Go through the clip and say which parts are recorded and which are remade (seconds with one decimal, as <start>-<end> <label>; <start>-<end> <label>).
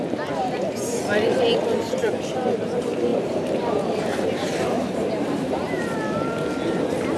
0.0-2.0 recorded; 2.0-2.5 remade; 2.5-3.1 recorded; 3.1-6.0 remade; 6.0-7.2 recorded